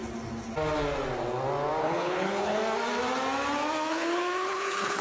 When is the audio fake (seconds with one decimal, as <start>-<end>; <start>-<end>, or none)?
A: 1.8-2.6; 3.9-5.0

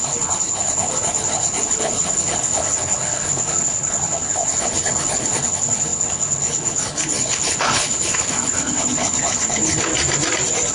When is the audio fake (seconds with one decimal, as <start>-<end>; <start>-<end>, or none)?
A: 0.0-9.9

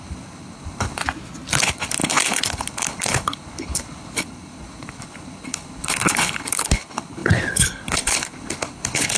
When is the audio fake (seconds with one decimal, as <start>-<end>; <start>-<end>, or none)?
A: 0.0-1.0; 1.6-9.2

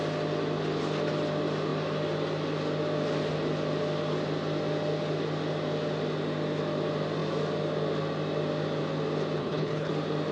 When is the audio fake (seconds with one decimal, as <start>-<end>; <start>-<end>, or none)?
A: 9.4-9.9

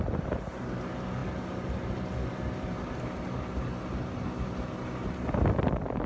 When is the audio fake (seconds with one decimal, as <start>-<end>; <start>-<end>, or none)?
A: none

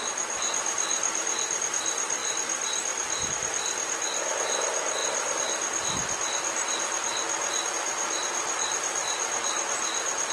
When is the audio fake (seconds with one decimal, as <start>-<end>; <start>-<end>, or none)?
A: none

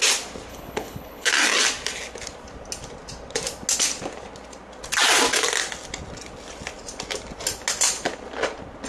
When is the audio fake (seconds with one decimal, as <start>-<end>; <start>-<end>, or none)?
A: 0.5-1.3